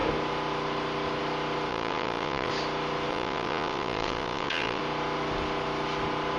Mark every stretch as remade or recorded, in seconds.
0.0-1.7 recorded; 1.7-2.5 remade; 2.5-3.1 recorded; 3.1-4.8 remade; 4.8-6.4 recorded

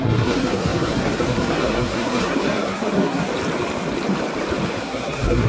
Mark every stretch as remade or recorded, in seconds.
0.0-3.3 remade; 3.3-4.8 recorded; 4.8-5.5 remade

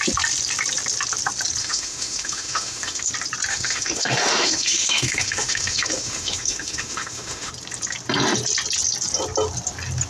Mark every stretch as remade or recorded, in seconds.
0.0-1.6 recorded; 1.6-3.1 remade; 3.1-3.5 recorded; 3.5-7.5 remade; 7.5-10.1 recorded

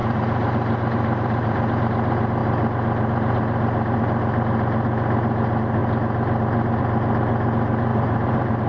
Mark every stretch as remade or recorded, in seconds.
0.0-1.7 remade; 1.7-7.9 recorded; 7.9-8.7 remade

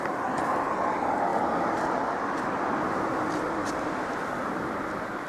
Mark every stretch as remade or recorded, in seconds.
0.0-1.3 recorded; 1.3-4.5 remade; 4.5-5.3 recorded